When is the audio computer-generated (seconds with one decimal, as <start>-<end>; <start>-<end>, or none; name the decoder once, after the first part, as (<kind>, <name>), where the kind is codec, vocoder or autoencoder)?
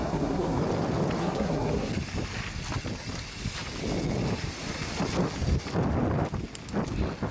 0.0-0.6 (codec, SNAC); 1.2-1.9